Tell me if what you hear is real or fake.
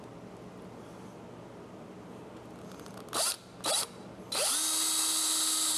real